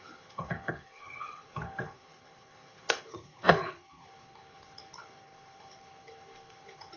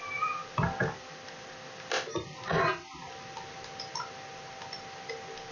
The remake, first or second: first